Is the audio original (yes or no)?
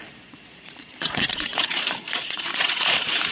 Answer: no